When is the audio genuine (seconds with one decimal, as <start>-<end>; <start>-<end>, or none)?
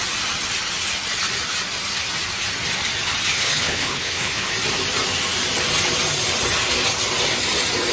0.0-3.3; 4.5-7.9